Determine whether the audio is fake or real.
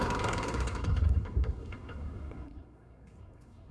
fake